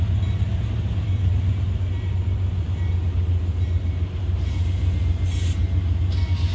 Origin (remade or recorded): recorded